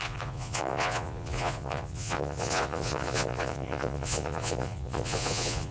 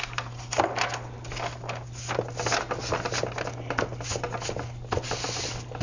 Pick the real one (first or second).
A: second